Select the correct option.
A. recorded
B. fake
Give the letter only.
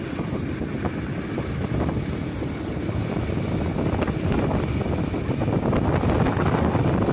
A